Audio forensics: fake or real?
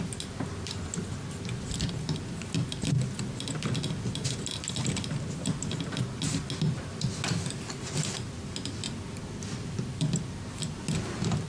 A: real